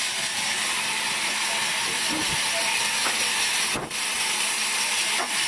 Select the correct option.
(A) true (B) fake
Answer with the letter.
A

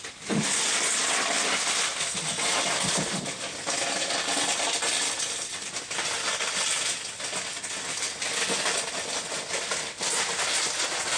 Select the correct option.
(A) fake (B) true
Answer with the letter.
B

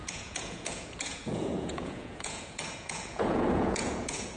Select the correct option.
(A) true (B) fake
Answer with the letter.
B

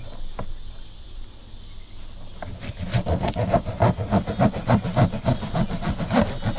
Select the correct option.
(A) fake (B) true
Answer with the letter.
B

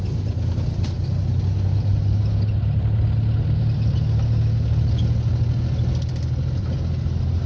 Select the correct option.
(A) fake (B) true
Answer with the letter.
B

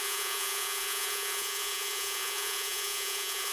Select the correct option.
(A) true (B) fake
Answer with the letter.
B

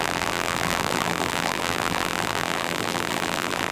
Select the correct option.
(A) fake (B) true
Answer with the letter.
A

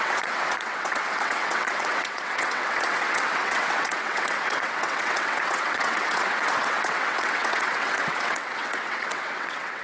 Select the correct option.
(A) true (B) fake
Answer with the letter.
B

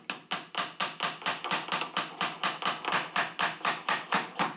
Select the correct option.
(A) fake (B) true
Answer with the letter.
B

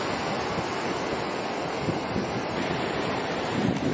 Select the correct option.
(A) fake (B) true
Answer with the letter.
A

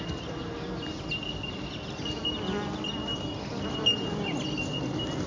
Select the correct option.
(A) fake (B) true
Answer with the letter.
B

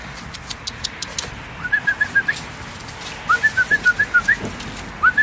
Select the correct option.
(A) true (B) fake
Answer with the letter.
A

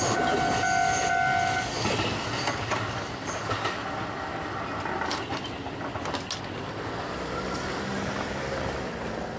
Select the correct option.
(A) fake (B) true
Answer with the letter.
B